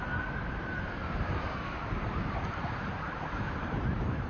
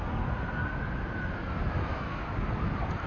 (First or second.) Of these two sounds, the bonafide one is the second